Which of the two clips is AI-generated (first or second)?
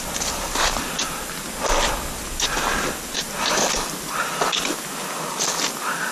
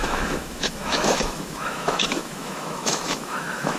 second